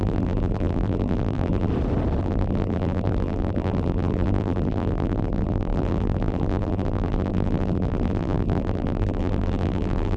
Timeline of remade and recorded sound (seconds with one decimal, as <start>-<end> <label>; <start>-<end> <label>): 0.0-1.7 remade; 1.7-2.2 recorded; 2.2-10.2 remade